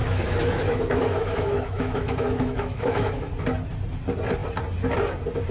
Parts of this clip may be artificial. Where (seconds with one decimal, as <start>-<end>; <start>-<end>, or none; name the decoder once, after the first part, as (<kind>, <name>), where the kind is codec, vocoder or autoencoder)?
0.0-3.3 (autoencoder, DAC-VAE)